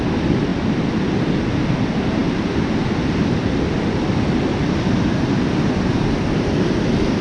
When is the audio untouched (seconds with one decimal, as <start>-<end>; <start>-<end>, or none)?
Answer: 0.0-7.2